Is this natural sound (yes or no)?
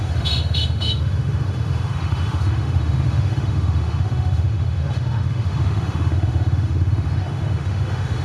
no